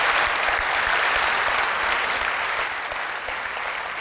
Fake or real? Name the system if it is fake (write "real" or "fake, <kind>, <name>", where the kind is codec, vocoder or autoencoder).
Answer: real